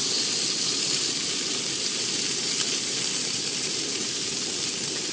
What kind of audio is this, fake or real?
real